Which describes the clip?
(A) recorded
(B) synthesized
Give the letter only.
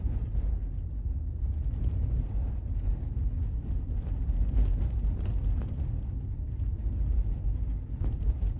A